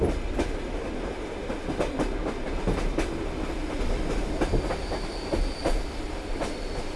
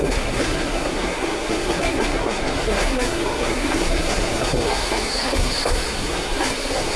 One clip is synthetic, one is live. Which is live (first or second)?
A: first